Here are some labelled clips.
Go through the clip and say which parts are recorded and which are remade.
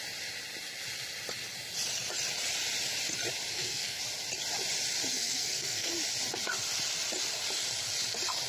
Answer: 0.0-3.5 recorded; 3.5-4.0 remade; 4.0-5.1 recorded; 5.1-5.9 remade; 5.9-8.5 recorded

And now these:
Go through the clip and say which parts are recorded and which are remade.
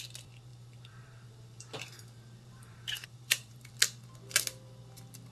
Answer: 0.0-0.5 recorded; 0.5-3.7 remade; 3.7-5.3 recorded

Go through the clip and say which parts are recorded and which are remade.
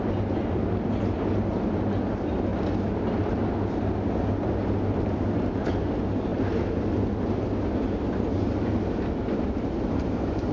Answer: 0.0-6.3 recorded; 6.3-6.9 remade; 6.9-10.5 recorded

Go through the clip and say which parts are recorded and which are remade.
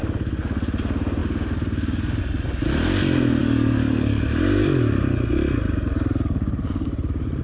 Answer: 0.0-3.4 recorded; 3.4-4.2 remade; 4.2-7.4 recorded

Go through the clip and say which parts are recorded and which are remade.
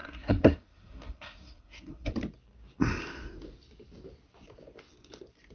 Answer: 0.0-2.1 remade; 2.1-5.5 recorded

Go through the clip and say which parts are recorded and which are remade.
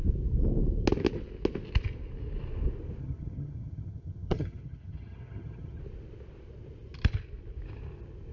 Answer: 0.0-3.0 recorded; 3.0-5.8 remade; 5.8-8.3 recorded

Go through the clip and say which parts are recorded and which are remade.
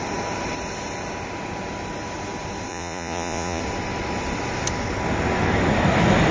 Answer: 0.0-2.7 recorded; 2.7-3.6 remade; 3.6-6.3 recorded